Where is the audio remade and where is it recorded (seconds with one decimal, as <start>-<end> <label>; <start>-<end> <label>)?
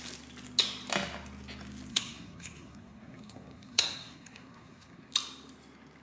0.0-1.9 recorded; 1.9-5.1 remade; 5.1-6.0 recorded